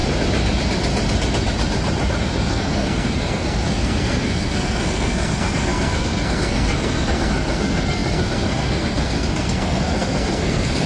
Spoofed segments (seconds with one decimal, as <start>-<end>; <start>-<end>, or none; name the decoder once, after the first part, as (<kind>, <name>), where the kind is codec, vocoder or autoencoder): 2.2-10.9 (codec, SNAC)